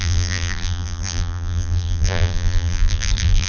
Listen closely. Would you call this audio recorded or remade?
remade